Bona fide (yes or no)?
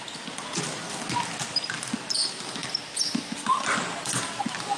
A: yes